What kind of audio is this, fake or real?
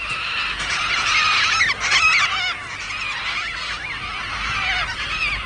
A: real